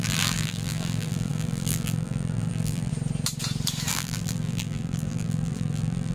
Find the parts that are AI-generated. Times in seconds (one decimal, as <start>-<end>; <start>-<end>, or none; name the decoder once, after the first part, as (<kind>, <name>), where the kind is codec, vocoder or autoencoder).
0.0-2.9 (vocoder, BigVGAN v2); 3.9-6.1